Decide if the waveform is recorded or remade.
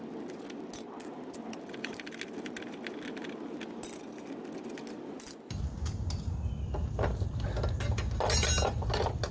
recorded